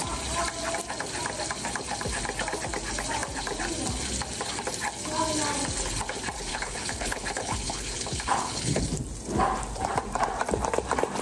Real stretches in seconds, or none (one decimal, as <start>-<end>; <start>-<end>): 0.0-6.5; 8.8-11.2